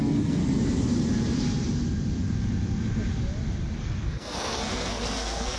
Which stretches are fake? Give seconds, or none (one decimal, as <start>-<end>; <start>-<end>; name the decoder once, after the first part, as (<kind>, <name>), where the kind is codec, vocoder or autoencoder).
0.0-0.4 (codec, SNAC); 3.8-5.6